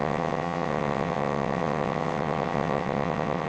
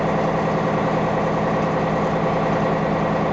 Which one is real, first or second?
second